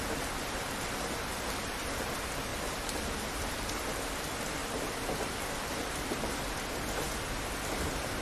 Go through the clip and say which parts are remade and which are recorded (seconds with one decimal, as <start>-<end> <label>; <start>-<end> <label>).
0.0-1.3 recorded; 1.3-2.1 remade; 2.1-4.6 recorded; 4.6-6.3 remade; 6.3-8.2 recorded